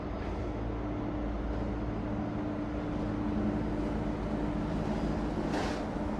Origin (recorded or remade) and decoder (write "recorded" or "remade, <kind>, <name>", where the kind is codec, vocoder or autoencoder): recorded